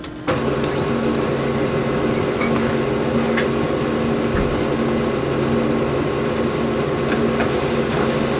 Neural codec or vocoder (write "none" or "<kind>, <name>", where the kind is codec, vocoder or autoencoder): none